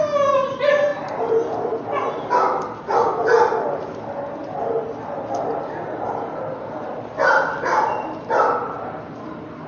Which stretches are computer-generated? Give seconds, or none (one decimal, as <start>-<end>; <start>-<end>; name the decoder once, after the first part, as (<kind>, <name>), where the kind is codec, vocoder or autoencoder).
none